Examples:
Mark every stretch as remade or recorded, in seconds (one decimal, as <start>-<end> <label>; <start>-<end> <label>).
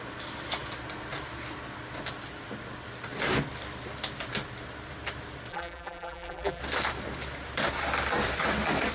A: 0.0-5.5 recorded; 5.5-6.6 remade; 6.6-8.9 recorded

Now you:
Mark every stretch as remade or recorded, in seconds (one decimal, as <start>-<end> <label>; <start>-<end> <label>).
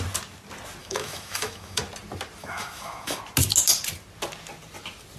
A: 0.0-0.8 recorded; 0.8-1.8 remade; 1.8-2.4 recorded; 2.4-3.2 remade; 3.2-5.2 recorded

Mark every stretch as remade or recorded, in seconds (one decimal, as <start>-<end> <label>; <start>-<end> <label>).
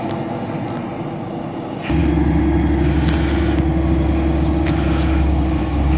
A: 0.0-6.0 recorded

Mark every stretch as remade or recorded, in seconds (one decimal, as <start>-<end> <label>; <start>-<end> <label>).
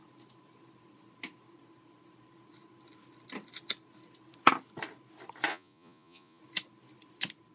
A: 0.0-5.5 recorded; 5.5-6.4 remade; 6.4-7.5 recorded